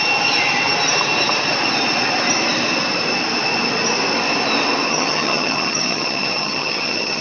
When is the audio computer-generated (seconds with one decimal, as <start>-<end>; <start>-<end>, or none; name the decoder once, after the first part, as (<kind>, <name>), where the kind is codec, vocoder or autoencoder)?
4.9-7.2 (vocoder, HiFi-GAN)